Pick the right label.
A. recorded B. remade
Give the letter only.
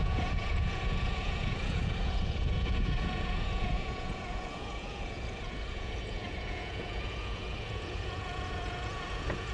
B